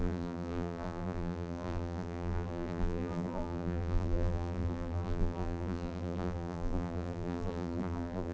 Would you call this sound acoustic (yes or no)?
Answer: no